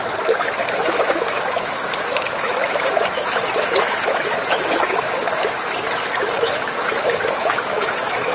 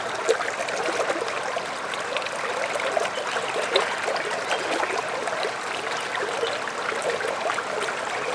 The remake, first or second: first